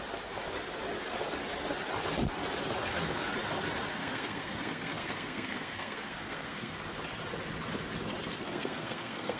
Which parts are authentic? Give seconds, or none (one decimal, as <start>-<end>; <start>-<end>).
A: 0.0-3.9; 6.7-8.3

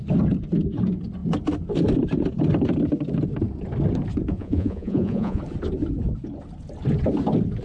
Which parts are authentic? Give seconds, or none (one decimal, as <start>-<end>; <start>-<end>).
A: 0.0-4.3; 5.4-7.6

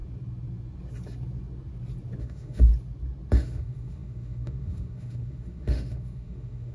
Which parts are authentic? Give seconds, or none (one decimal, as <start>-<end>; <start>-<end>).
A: 0.0-2.2; 2.7-3.4